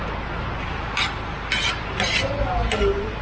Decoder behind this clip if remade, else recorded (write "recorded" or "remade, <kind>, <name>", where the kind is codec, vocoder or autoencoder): recorded